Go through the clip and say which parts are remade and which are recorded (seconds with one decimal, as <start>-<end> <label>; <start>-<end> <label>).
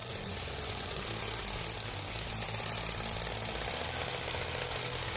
0.0-1.0 remade; 1.0-5.2 recorded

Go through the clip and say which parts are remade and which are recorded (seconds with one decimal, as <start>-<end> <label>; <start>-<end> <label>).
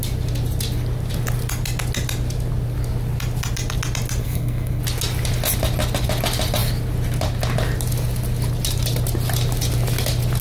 0.0-4.2 recorded; 4.2-4.8 remade; 4.8-10.4 recorded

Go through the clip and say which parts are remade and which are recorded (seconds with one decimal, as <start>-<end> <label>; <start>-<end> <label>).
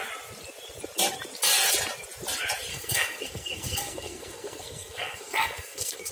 0.0-2.7 recorded; 2.7-6.1 remade